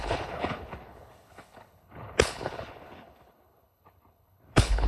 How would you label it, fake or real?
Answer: fake